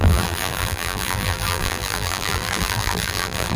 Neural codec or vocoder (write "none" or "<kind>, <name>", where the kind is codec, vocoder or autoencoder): vocoder, BigVGAN v2